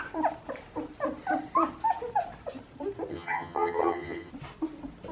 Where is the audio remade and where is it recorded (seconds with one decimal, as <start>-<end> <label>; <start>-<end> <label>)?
0.0-3.1 recorded; 3.1-4.3 remade; 4.3-5.1 recorded